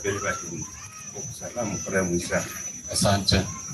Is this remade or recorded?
recorded